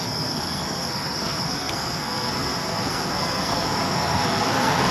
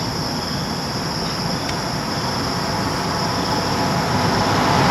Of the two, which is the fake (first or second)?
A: first